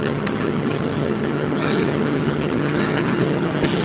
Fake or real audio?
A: fake